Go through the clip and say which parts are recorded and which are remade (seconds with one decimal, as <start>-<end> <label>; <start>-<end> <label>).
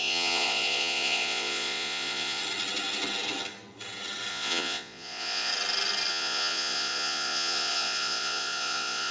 0.0-2.4 remade; 2.4-4.3 recorded; 4.3-5.5 remade; 5.5-6.1 recorded; 6.1-9.1 remade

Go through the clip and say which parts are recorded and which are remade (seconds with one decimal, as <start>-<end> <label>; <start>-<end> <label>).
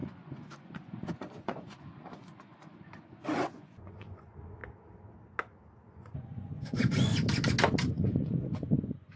0.0-4.6 remade; 4.6-5.9 recorded; 5.9-7.1 remade; 7.1-7.9 recorded; 7.9-9.2 remade